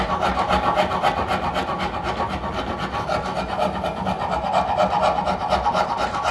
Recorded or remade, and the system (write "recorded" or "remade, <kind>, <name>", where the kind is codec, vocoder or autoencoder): recorded